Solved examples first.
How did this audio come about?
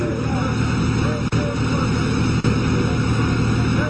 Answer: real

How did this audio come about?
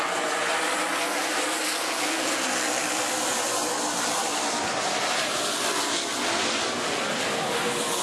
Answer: real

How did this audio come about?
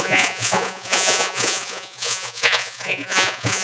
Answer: fake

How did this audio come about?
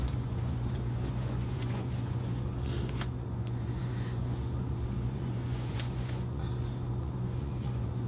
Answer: fake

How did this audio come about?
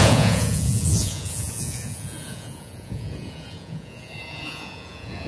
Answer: fake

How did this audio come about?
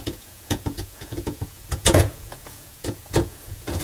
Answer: fake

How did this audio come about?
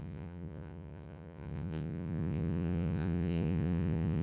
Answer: fake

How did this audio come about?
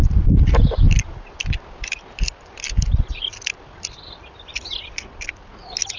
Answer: real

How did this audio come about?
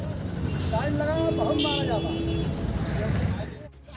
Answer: real